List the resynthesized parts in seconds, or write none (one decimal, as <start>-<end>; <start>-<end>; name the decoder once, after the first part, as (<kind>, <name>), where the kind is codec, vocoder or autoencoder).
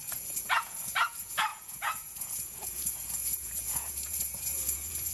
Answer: 0.0-5.1 (vocoder, Vocos)